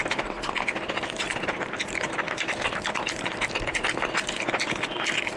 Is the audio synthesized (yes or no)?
no